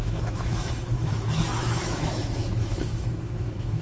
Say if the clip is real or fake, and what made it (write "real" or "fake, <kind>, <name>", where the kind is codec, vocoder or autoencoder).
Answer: fake, autoencoder, DAC-VAE